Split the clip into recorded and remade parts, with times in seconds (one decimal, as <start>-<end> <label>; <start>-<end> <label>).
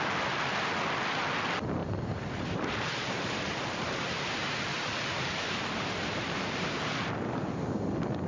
0.0-1.8 recorded; 1.8-6.8 remade; 6.8-8.3 recorded